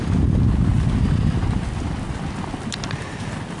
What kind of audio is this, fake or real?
real